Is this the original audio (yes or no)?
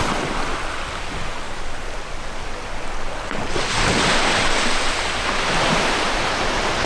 yes